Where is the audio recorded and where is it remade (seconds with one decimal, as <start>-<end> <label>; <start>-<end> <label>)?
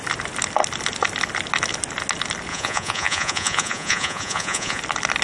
0.0-2.5 recorded; 2.5-4.8 remade; 4.8-5.2 recorded